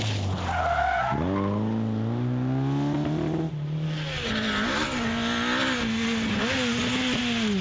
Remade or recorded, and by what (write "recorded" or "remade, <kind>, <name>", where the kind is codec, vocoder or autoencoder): recorded